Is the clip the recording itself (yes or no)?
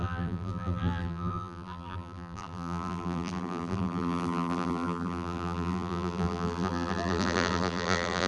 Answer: no